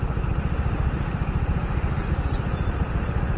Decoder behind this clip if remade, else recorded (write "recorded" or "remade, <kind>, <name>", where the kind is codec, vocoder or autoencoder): remade, vocoder, BigVGAN v2